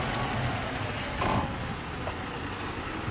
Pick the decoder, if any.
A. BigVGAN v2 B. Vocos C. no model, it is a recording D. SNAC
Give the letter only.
C